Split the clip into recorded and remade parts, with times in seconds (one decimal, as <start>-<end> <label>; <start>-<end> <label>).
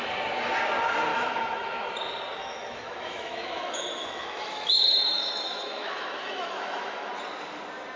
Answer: 0.0-1.1 recorded; 1.1-1.9 remade; 1.9-2.3 recorded; 2.3-7.1 remade; 7.1-8.0 recorded